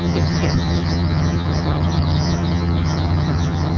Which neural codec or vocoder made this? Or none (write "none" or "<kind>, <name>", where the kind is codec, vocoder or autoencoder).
vocoder, HiFi-GAN